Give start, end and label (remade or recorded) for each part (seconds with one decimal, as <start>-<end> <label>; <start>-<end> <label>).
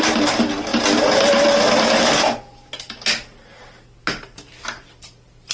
0.0-5.5 recorded